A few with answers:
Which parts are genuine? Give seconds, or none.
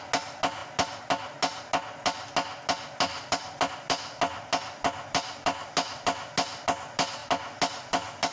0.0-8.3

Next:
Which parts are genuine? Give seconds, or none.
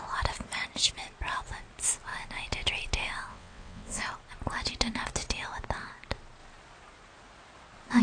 0.0-3.3; 4.0-8.0